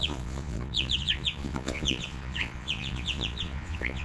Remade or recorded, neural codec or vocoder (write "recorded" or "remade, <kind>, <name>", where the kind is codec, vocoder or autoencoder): remade, vocoder, Vocos